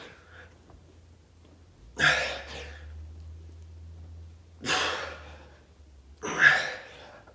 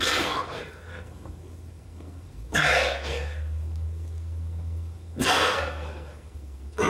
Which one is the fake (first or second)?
second